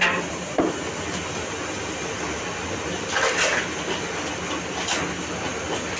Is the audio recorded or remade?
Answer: recorded